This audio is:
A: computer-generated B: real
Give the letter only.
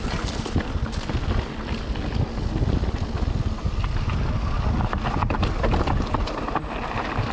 B